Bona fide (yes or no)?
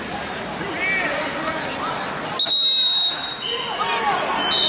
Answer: yes